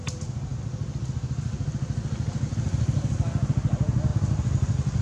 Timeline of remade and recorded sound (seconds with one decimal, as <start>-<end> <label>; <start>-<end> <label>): 0.0-5.0 recorded